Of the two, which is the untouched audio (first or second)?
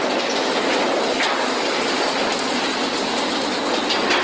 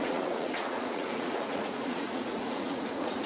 first